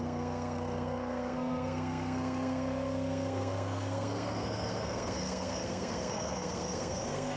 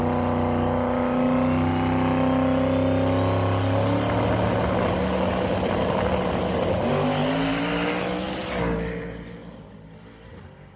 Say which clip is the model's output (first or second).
first